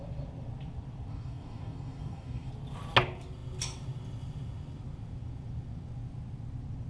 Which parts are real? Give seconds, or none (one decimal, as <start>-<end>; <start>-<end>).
0.0-1.1; 2.5-6.9